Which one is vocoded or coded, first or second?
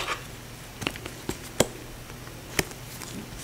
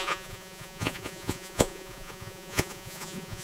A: second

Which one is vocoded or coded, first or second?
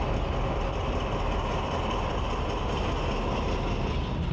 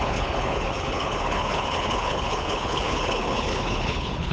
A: second